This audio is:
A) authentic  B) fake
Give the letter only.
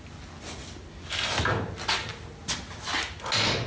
A